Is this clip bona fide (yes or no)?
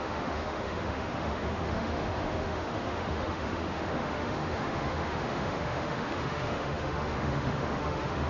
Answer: no